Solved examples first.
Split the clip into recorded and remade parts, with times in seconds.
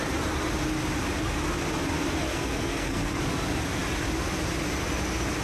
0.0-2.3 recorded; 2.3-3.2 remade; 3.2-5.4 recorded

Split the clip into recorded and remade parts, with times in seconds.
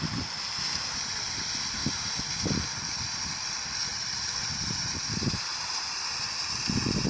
0.0-3.9 recorded; 3.9-6.3 remade; 6.3-7.1 recorded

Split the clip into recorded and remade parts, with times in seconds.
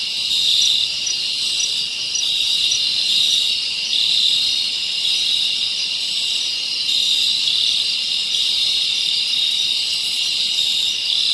0.0-11.3 recorded